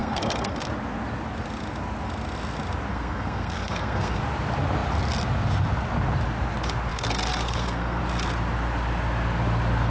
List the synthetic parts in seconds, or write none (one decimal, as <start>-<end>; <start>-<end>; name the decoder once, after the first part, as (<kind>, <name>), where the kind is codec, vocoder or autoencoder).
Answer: 0.0-0.7 (codec, SNAC); 2.9-4.2; 6.9-8.0